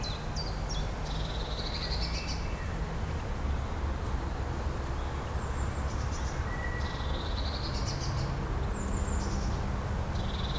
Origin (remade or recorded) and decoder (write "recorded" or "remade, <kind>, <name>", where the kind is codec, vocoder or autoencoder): recorded